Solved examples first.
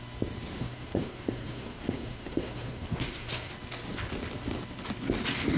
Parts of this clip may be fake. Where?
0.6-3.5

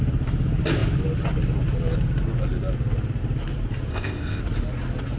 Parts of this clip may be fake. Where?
3.9-4.4

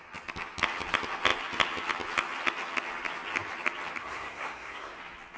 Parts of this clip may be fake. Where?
4.0-5.0

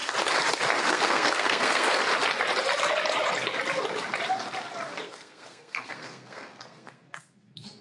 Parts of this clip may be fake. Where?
0.8-2.0; 5.0-7.8

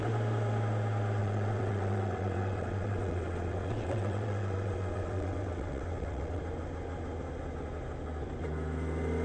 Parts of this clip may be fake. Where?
1.2-6.4

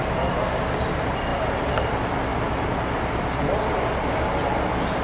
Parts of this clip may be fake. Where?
none